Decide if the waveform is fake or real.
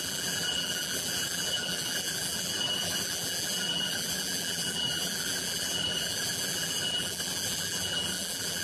fake